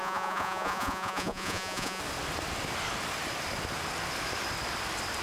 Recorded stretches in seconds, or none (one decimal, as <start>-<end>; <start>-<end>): 2.0-5.2

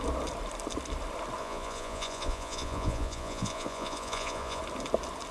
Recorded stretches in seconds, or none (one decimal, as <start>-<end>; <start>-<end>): 0.0-1.4; 4.6-5.3

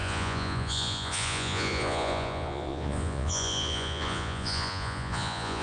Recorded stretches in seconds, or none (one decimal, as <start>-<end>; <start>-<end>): none

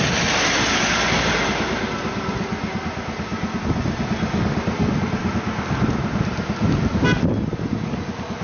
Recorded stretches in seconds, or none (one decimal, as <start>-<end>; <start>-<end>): 0.0-8.4